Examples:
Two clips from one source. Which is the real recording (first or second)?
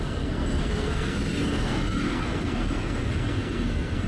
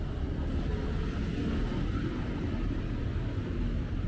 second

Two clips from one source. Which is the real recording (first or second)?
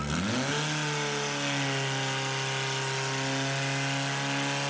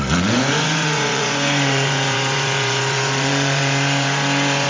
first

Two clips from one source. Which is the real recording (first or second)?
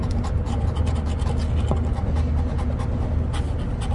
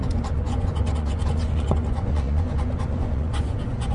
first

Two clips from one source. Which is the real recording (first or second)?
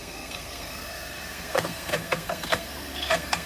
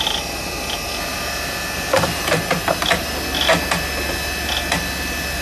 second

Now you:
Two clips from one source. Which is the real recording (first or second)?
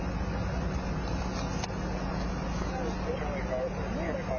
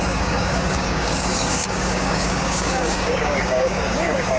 first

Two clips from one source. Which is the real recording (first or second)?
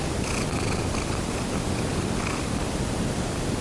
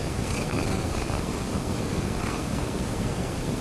first